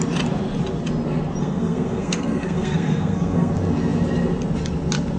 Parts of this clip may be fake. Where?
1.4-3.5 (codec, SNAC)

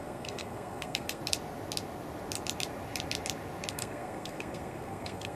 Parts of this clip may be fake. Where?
0.0-1.2 (codec, SNAC); 3.7-5.4

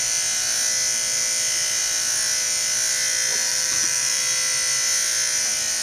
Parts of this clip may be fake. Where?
3.5-4.2 (vocoder, BigVGAN v2)

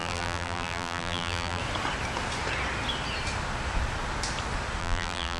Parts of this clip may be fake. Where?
0.0-1.6 (vocoder, BigVGAN v2); 4.8-5.4

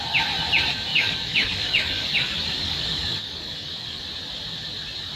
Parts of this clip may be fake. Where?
0.9-4.0 (codec, DAC)

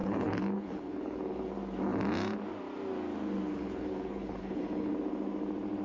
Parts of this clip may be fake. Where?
0.0-1.5 (codec, HILCodec); 3.5-4.9

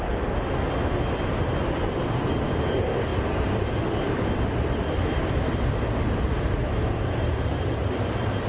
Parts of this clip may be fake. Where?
3.1-7.2 (vocoder, BigVGAN v2)